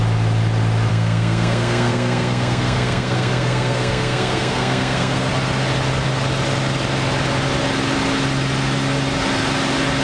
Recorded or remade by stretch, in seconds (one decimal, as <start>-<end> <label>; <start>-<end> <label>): 0.0-0.9 recorded; 0.9-5.3 remade; 5.3-10.0 recorded